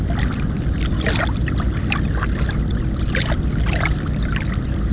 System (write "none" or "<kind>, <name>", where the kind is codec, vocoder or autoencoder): none